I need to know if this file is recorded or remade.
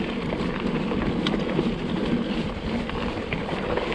recorded